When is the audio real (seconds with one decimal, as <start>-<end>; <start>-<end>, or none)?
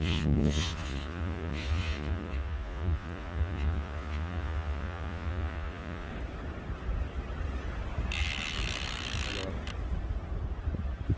6.1-11.2